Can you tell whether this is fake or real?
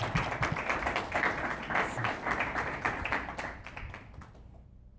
real